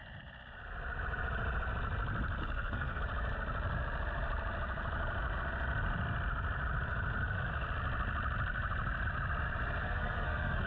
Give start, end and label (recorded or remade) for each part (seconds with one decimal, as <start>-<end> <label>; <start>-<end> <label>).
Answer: 0.0-2.4 recorded; 2.4-3.0 remade; 3.0-9.8 recorded; 9.8-10.7 remade